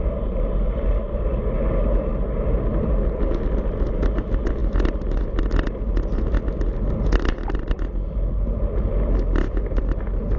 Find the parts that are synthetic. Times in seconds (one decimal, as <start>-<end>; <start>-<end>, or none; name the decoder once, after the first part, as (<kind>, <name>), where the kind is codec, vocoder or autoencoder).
none

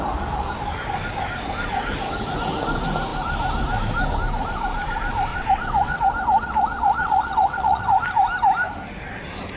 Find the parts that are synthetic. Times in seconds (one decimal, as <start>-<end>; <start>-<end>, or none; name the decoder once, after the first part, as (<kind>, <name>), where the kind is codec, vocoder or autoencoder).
5.3-7.8 (vocoder, WaveNeXt)